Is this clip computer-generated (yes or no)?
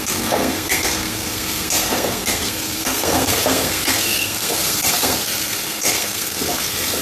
yes